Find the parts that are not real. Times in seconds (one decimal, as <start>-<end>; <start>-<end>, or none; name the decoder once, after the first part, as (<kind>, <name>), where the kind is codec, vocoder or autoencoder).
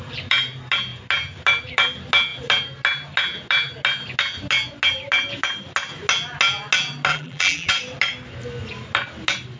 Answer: 7.1-7.7 (vocoder, BigVGAN v2)